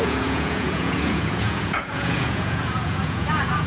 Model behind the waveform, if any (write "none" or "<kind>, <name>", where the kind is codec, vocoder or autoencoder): vocoder, Vocos